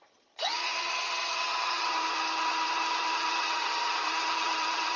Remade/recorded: remade